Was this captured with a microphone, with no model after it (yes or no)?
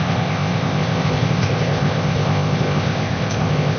no